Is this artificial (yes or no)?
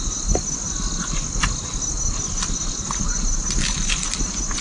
no